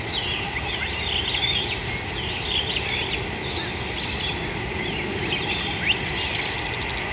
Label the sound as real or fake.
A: real